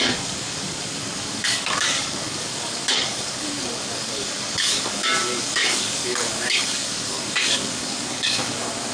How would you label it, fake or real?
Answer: fake